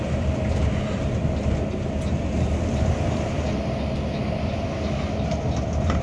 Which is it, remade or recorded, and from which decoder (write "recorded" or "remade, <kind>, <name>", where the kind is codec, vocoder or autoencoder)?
recorded